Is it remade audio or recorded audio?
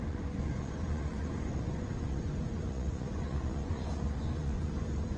remade